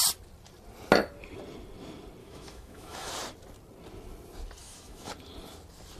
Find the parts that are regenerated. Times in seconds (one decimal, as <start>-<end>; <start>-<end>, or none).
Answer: 2.2-3.1; 4.6-5.1